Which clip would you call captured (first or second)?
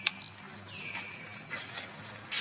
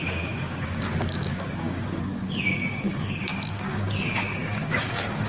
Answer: first